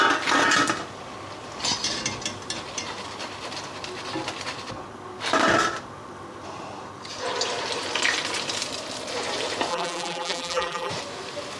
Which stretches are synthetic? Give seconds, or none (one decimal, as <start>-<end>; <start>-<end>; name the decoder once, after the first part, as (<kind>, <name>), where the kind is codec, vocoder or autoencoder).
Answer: 9.7-10.9 (vocoder, BigVGAN v2)